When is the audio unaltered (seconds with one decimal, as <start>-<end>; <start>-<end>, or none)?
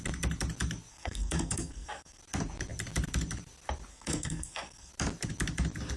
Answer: 0.0-0.9; 2.2-3.9; 4.9-6.0